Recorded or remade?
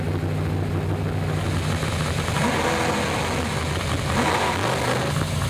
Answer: recorded